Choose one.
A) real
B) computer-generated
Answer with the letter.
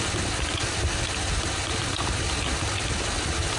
A